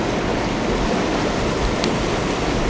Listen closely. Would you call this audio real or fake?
real